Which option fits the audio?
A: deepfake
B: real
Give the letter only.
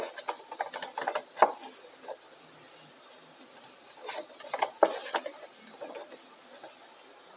B